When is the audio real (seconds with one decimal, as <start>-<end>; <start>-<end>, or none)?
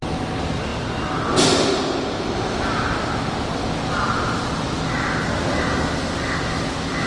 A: 0.0-7.1